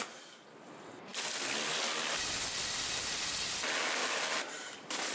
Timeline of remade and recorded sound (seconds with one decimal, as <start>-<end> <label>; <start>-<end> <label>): 0.0-4.0 recorded; 4.0-5.1 remade